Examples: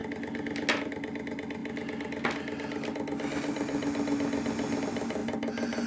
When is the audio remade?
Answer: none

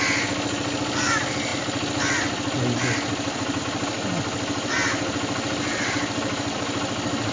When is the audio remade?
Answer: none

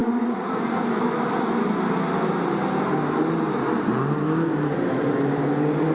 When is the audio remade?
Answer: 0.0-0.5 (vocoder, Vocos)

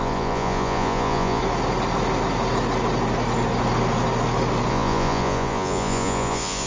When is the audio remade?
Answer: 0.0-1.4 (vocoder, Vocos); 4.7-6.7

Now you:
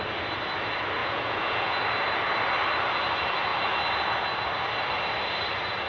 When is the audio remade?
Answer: 1.0-1.8 (vocoder, Vocos)

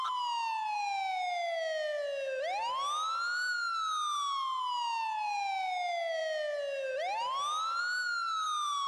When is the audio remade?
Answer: none